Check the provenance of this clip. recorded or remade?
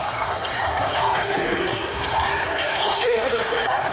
remade